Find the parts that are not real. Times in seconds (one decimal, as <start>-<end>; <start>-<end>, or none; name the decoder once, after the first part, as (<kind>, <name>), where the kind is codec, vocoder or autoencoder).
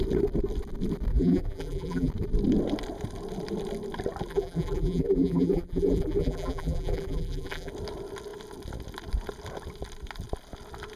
1.1-2.1 (vocoder, BigVGAN v2); 4.3-7.7